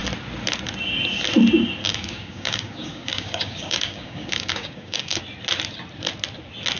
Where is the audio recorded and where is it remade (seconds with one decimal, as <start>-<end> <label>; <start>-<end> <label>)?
0.0-1.8 recorded; 1.8-5.2 remade; 5.2-6.8 recorded